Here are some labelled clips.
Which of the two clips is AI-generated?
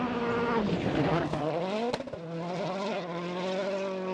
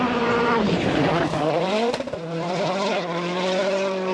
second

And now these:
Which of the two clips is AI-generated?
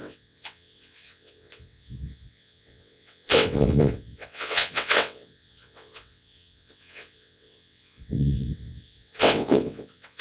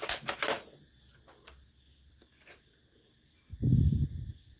first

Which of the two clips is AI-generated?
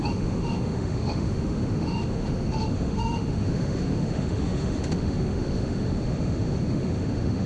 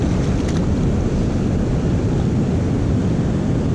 first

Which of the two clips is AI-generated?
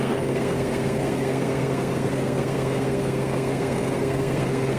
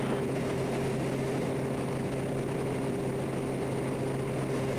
first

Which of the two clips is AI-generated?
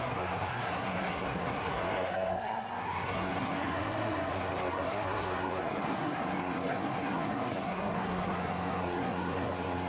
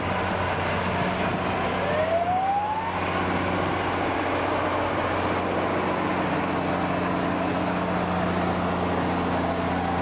first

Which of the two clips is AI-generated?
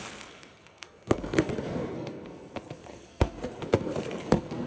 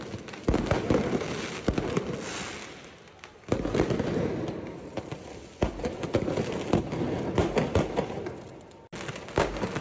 first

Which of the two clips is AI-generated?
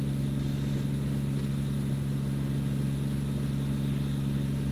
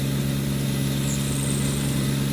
second